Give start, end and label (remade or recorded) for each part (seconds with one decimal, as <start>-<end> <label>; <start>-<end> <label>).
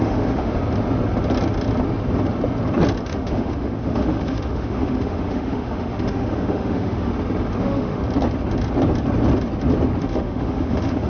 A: 0.0-0.6 remade; 0.6-3.0 recorded; 3.0-7.1 remade; 7.1-7.6 recorded; 7.6-8.0 remade; 8.0-10.0 recorded; 10.0-11.1 remade